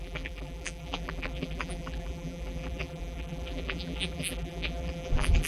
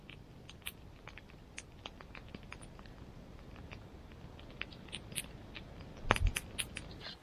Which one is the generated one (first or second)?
first